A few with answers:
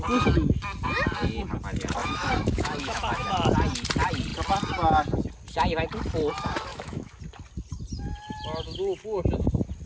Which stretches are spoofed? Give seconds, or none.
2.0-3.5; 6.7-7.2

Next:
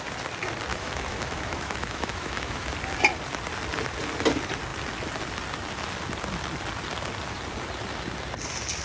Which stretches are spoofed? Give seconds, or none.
0.7-2.7

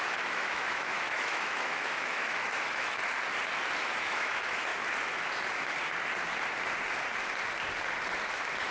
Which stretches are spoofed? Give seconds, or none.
0.0-3.0; 3.8-4.7

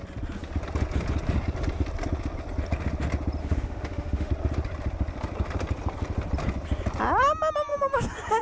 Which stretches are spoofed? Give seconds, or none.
3.4-4.3

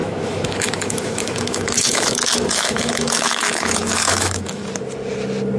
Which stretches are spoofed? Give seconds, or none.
0.0-4.6

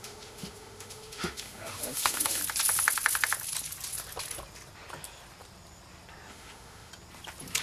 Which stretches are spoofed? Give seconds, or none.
0.0-2.4; 6.3-6.9